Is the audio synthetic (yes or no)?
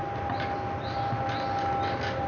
no